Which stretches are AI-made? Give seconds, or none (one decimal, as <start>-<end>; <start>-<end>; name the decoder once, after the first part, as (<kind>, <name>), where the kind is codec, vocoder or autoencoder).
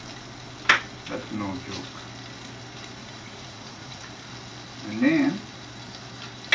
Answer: 3.0-4.0 (vocoder, Vocos)